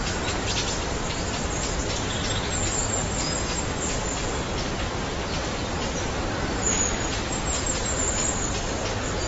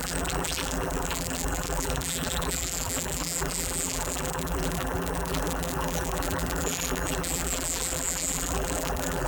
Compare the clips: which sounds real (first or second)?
first